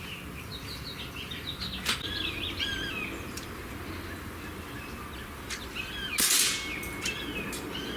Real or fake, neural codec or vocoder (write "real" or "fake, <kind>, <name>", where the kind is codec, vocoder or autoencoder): real